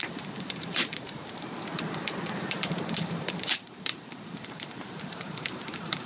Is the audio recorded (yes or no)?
no